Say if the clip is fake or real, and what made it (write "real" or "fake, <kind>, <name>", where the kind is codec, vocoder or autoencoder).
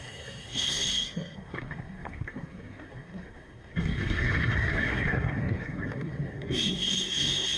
fake, codec, SNAC